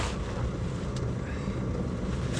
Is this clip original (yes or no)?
yes